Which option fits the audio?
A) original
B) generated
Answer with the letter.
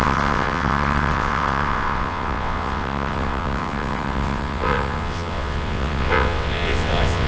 B